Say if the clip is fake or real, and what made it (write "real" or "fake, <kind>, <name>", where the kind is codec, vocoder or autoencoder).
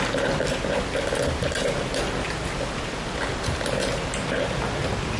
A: real